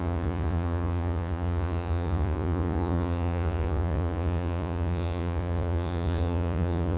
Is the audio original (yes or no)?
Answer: no